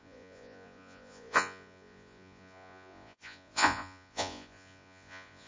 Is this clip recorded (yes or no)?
no